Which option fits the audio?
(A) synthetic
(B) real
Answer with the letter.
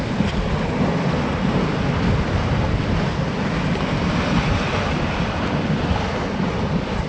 B